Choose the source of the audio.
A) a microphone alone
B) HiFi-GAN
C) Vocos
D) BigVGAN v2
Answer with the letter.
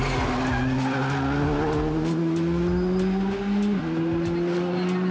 A